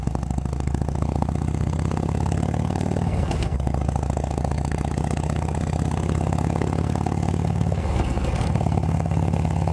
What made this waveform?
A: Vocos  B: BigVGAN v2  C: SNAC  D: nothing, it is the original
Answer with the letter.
C